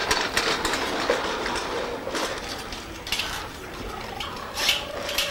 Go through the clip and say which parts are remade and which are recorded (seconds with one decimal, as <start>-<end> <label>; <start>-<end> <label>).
0.0-3.2 recorded; 3.2-5.3 remade